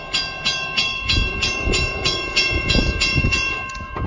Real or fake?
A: fake